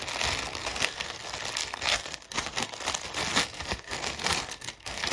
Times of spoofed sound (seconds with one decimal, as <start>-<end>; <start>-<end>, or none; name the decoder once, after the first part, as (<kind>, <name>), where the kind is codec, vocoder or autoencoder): 0.6-1.2 (codec, SNAC); 1.6-2.8; 3.3-5.1